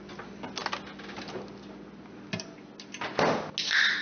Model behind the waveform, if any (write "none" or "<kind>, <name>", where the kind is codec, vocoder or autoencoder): none